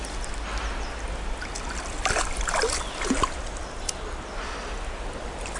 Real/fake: real